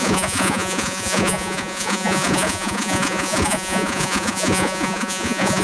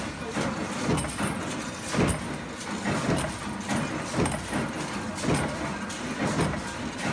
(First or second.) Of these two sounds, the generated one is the first